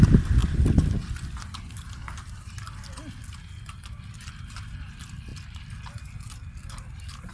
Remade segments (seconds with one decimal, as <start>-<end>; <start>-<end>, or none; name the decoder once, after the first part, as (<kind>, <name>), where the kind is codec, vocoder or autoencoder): none